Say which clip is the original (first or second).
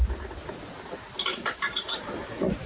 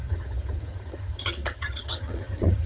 first